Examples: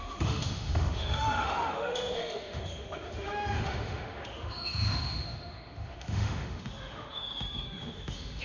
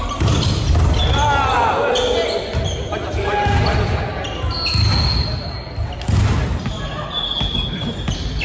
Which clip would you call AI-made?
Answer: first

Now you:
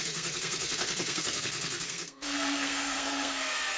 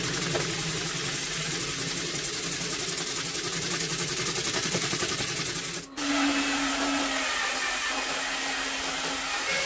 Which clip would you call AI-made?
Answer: first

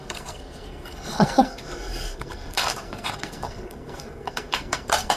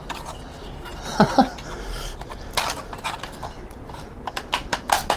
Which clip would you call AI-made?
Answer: first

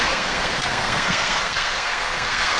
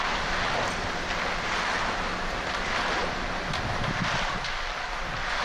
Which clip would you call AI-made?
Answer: first